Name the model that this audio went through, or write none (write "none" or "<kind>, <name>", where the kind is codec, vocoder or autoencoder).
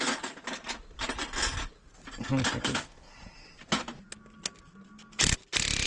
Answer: none